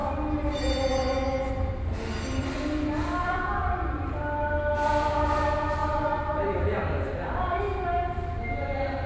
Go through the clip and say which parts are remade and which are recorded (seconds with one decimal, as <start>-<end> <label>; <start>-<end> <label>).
0.0-2.4 recorded; 2.4-4.6 remade; 4.6-5.8 recorded; 5.8-7.6 remade; 7.6-9.1 recorded